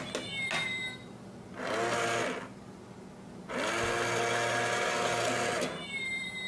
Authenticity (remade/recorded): recorded